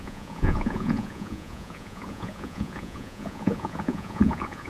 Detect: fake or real fake